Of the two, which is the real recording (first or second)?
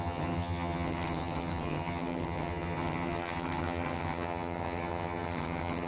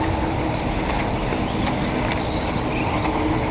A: second